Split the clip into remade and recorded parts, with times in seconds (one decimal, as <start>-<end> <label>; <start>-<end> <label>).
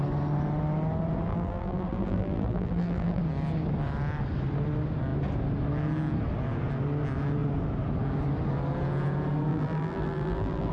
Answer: 0.0-1.3 recorded; 1.3-3.2 remade; 3.2-9.5 recorded; 9.5-10.7 remade